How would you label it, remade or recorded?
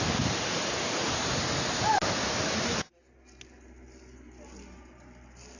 recorded